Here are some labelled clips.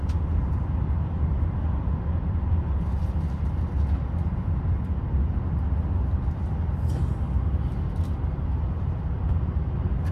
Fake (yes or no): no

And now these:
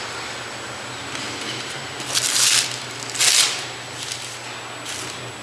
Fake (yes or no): no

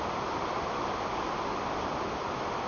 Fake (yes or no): no